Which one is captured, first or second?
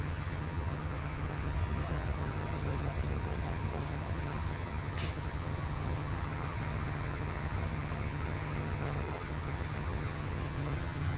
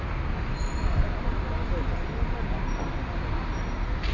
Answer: second